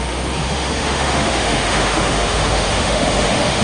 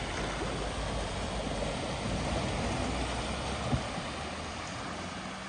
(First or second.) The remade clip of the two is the first